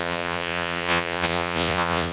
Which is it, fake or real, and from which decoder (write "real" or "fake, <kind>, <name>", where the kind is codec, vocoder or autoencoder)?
fake, vocoder, Vocos